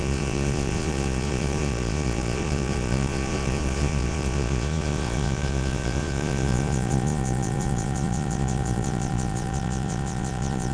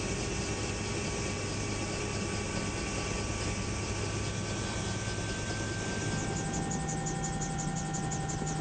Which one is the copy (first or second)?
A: first